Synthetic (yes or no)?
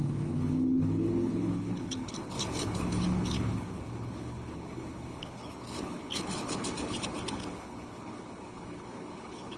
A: yes